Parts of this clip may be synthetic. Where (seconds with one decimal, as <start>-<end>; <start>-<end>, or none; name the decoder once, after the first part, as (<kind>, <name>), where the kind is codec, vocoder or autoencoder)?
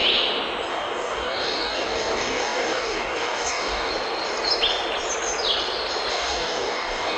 0.7-3.9 (codec, DAC); 6.1-7.2